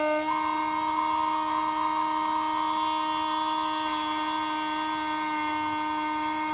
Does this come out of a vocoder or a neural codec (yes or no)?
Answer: no